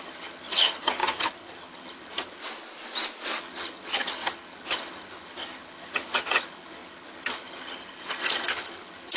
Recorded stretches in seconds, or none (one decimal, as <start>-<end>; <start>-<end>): 2.4-3.4